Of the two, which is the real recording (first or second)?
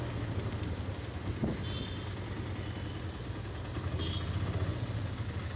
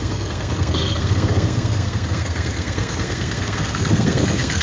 first